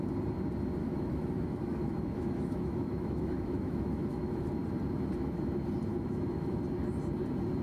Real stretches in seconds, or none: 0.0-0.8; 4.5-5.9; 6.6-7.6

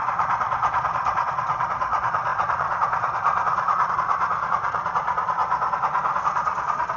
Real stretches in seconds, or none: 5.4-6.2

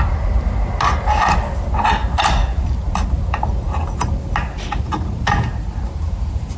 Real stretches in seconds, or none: 0.0-6.6